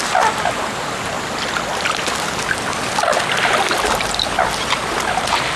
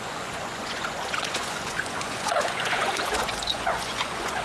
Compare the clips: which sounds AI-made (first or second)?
second